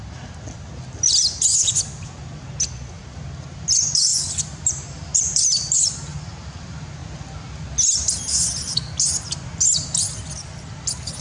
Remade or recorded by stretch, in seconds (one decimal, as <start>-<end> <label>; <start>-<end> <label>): 0.0-4.1 recorded; 4.1-5.7 remade; 5.7-11.2 recorded